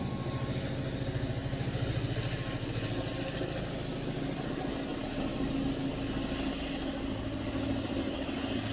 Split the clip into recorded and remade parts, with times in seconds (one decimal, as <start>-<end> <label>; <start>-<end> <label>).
0.0-8.7 recorded